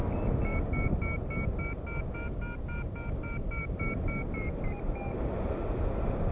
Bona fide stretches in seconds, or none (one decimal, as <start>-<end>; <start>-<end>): 0.0-6.3